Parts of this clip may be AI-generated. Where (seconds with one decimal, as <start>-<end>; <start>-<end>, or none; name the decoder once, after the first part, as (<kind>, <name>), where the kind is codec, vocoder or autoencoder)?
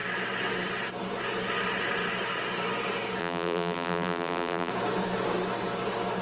3.2-4.7 (vocoder, BigVGAN v2)